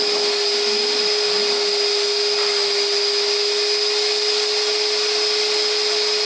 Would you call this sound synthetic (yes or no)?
no